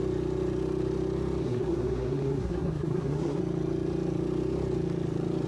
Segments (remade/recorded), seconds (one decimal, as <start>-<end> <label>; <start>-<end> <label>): 0.0-1.4 recorded; 1.4-3.4 remade; 3.4-5.5 recorded